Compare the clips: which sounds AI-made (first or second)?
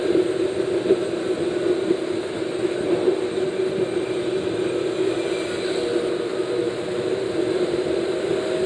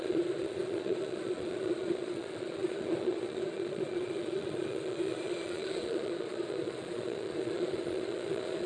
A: second